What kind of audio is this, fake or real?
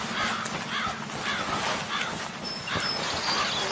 real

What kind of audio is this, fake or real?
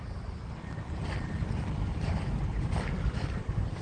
fake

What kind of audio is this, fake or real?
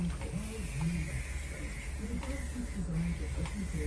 real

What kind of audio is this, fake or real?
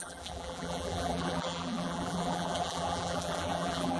fake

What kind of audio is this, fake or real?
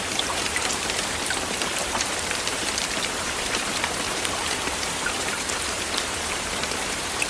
fake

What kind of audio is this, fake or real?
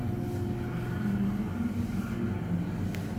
real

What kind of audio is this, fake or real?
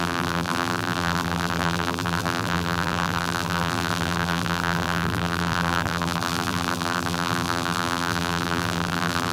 fake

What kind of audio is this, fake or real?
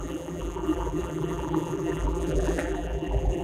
fake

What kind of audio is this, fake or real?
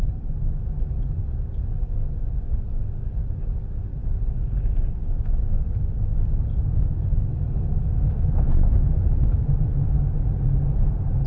real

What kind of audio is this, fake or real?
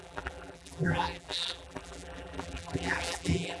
fake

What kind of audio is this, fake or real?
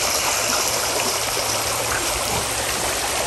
fake